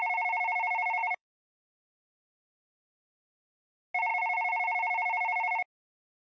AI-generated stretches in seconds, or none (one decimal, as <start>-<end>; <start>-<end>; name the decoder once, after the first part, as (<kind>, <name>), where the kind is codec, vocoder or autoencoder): 1.0-1.6 (autoencoder, DAC-VAE)